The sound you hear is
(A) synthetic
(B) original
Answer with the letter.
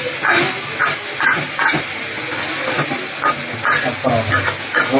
B